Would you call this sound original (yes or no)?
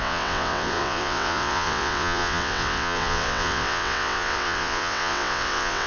no